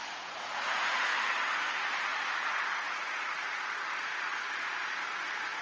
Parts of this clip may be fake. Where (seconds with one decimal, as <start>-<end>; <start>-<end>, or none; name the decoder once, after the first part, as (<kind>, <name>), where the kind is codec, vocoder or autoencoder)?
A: 0.0-1.1 (vocoder, Vocos); 1.7-4.1; 4.9-5.6